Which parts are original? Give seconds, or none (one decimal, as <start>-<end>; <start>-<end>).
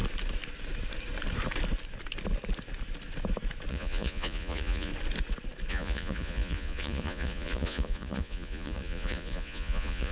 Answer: 0.0-3.7; 4.9-5.7